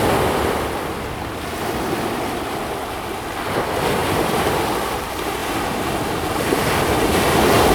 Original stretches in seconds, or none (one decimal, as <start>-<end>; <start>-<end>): 0.0-4.0; 4.6-7.7